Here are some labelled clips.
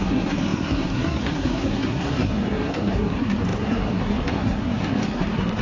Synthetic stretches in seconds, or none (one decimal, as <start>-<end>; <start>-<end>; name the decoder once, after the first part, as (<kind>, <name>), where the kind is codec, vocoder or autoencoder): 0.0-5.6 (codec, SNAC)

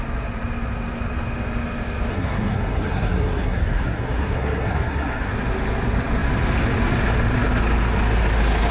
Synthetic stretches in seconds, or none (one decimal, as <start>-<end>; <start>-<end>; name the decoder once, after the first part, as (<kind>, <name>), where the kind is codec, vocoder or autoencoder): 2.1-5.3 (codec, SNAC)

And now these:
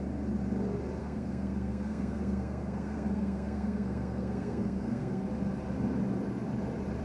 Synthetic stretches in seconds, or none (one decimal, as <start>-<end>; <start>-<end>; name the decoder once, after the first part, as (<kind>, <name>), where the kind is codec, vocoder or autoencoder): 1.0-5.2 (codec, SNAC)